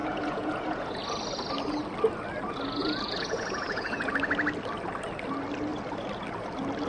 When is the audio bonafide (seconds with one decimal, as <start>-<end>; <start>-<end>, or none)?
1.0-2.8; 4.1-6.9